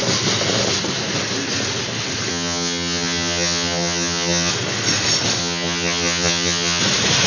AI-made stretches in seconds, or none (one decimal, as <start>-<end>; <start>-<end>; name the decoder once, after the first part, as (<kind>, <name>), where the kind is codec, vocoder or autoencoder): 2.3-4.5 (vocoder, HiFi-GAN); 5.4-6.8